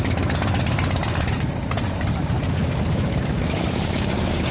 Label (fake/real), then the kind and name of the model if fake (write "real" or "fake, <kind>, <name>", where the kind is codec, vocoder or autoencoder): fake, vocoder, BigVGAN v2